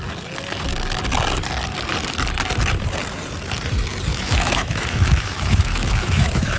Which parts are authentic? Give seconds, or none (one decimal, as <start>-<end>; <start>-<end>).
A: 0.0-4.1